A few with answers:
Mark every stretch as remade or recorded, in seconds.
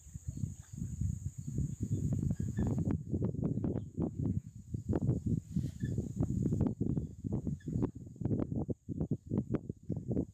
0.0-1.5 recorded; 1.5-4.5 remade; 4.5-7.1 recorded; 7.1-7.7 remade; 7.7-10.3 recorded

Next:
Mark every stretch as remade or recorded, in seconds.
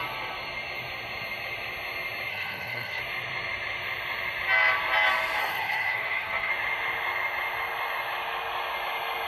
0.0-2.3 recorded; 2.3-3.0 remade; 3.0-5.4 recorded; 5.4-6.5 remade; 6.5-9.3 recorded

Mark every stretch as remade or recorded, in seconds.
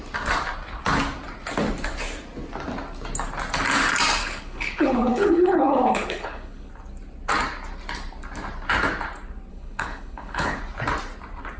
0.0-4.2 recorded; 4.2-6.7 remade; 6.7-9.5 recorded; 9.5-10.6 remade; 10.6-11.6 recorded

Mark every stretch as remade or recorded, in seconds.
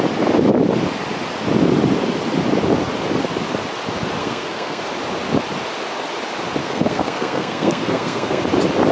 0.0-4.2 recorded; 4.2-4.8 remade; 4.8-6.6 recorded; 6.6-8.4 remade; 8.4-8.9 recorded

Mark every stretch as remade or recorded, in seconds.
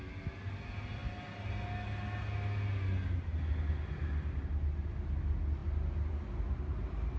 0.0-7.2 recorded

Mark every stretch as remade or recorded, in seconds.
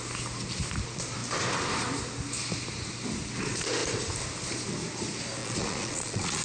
0.0-5.4 recorded; 5.4-6.4 remade